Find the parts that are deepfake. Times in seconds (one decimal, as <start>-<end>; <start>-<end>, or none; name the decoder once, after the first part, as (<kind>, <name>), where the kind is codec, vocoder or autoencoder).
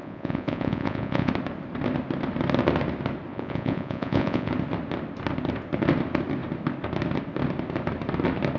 0.0-1.3 (vocoder, Vocos); 3.3-4.5